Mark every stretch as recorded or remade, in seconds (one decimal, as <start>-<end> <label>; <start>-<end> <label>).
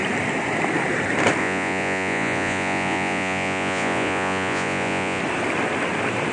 0.0-1.4 recorded; 1.4-5.2 remade; 5.2-6.3 recorded